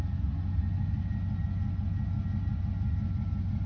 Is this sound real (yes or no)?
yes